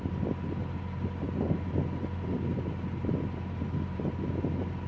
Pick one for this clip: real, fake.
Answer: real